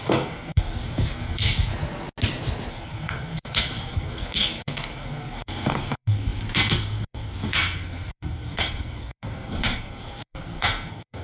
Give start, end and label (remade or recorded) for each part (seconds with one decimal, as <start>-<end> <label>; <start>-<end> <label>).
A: 0.0-1.7 remade; 1.7-2.7 recorded; 2.7-11.2 remade